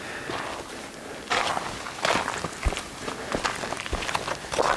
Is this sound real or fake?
real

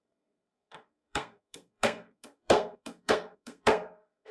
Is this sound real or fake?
fake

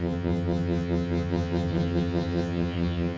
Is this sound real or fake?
fake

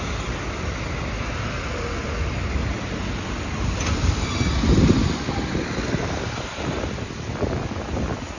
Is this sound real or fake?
real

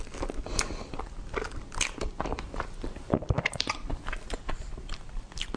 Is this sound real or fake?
fake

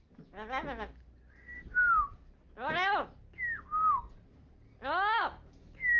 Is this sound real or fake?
real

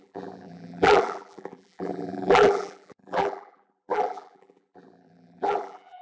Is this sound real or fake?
fake